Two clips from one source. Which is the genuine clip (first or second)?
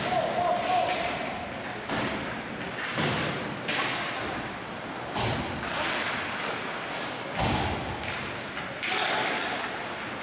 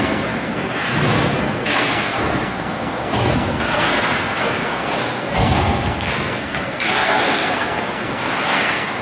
first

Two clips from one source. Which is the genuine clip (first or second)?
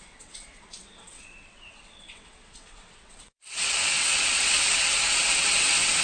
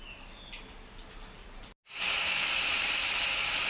second